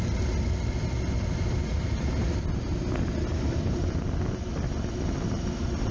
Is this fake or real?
real